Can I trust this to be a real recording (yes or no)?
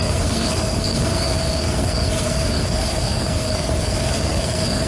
no